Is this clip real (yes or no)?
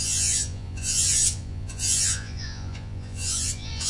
no